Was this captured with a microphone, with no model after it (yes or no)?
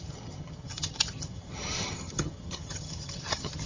no